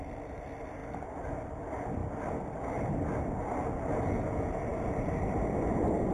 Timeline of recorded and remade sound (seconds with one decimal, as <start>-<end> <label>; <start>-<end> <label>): 0.0-0.8 remade; 0.8-1.5 recorded; 1.5-2.0 remade; 2.0-4.3 recorded; 4.3-6.1 remade